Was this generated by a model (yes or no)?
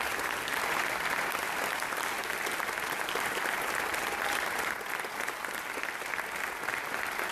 no